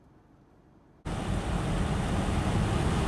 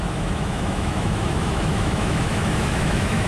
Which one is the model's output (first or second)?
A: second